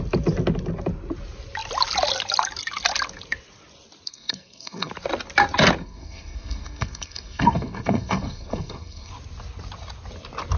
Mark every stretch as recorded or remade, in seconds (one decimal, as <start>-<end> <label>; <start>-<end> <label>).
0.0-4.1 recorded; 4.1-4.9 remade; 4.9-5.8 recorded; 5.8-9.1 remade; 9.1-10.6 recorded

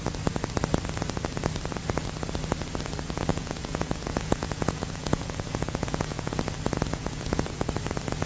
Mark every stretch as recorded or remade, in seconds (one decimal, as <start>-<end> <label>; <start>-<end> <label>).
0.0-3.3 recorded; 3.3-6.4 remade; 6.4-7.0 recorded; 7.0-7.7 remade; 7.7-8.3 recorded

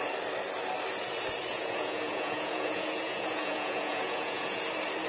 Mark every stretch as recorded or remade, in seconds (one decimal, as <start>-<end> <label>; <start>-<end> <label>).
0.0-1.5 recorded; 1.5-4.6 remade; 4.6-5.1 recorded

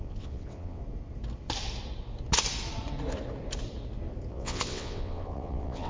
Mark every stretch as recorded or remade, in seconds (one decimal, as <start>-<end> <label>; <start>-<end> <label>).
0.0-0.8 remade; 0.8-4.3 recorded; 4.3-5.9 remade